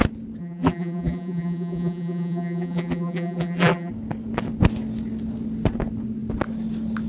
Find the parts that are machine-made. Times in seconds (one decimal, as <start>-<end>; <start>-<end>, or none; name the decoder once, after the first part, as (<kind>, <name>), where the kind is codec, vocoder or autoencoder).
0.4-3.9 (vocoder, BigVGAN v2)